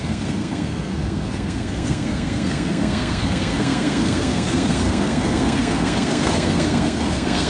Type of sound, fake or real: fake